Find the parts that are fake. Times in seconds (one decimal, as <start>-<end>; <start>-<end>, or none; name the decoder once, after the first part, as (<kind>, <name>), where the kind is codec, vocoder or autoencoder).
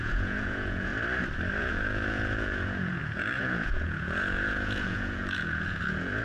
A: 0.0-0.9 (vocoder, Vocos); 1.6-6.2